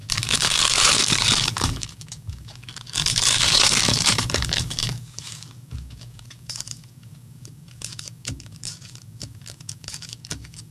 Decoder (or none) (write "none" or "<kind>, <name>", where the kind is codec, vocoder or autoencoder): codec, DAC